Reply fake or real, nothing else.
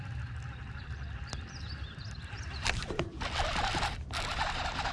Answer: real